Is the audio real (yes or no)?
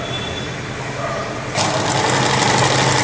yes